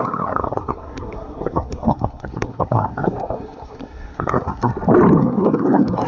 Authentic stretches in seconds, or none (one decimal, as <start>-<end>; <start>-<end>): 4.7-5.2